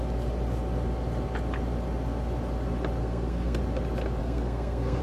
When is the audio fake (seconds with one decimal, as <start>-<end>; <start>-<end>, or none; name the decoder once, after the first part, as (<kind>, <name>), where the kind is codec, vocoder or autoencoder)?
3.0-3.6 (codec, SNAC); 4.2-5.0